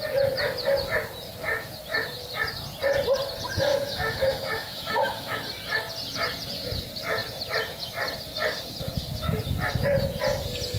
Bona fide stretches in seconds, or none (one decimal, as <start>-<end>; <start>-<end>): 0.0-3.7; 5.4-10.8